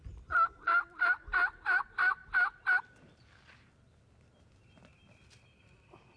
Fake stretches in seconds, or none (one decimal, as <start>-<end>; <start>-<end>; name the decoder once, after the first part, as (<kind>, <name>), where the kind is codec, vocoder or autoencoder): 2.2-2.8 (vocoder, BigVGAN v2)